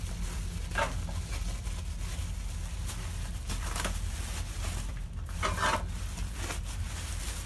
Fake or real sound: real